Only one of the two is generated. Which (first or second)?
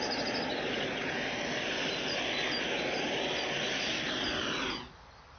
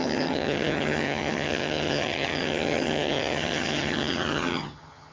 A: second